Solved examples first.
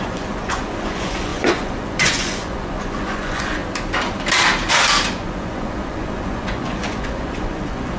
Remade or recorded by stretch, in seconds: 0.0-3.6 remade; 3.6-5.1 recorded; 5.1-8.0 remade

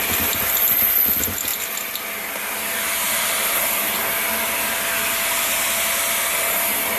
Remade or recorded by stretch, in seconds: 0.0-7.0 recorded

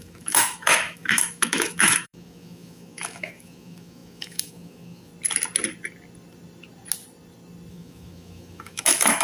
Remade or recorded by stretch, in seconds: 0.0-5.1 remade; 5.1-7.7 recorded; 7.7-9.2 remade

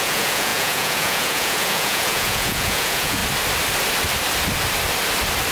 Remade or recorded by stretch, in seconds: 0.0-3.2 remade; 3.2-5.5 recorded

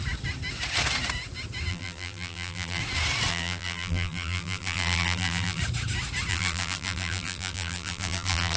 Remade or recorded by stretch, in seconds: 0.0-1.7 recorded; 1.7-2.8 remade; 2.8-3.3 recorded; 3.3-5.6 remade; 5.6-6.3 recorded; 6.3-8.6 remade